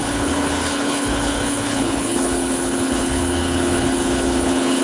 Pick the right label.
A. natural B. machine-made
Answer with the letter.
B